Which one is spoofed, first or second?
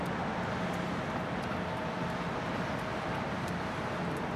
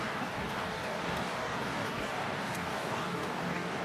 second